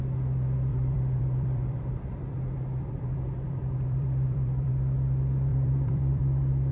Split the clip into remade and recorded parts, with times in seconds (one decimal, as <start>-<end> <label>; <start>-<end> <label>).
0.0-0.7 recorded; 0.7-4.7 remade; 4.7-5.5 recorded; 5.5-6.2 remade; 6.2-6.7 recorded